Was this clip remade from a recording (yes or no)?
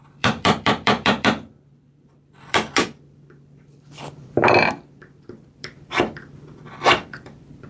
yes